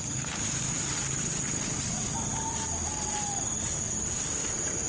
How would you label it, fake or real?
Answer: real